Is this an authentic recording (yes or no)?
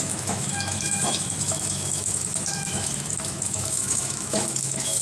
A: no